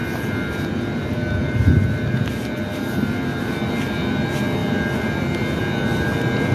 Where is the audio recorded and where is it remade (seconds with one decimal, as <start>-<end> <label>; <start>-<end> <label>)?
0.0-6.5 recorded